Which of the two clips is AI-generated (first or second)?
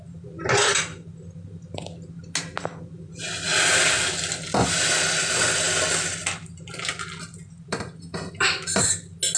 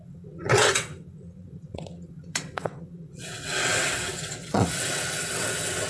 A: second